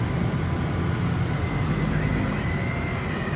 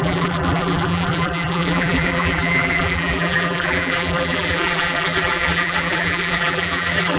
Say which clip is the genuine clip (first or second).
first